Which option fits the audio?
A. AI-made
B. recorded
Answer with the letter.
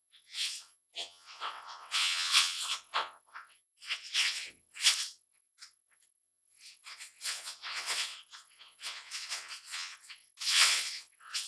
A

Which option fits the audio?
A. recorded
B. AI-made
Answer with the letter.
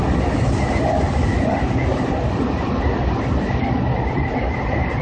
A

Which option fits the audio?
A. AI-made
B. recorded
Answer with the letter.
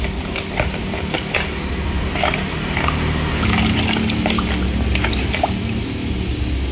B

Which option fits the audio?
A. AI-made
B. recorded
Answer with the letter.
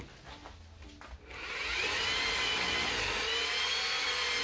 B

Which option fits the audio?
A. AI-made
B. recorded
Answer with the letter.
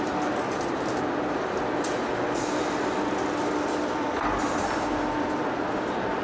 B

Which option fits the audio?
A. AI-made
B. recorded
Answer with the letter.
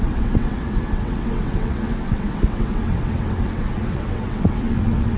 A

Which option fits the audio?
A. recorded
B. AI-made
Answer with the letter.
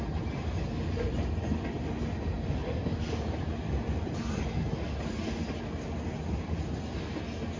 A